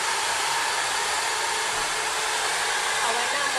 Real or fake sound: real